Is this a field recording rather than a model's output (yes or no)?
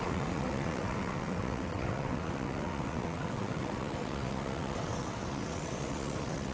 no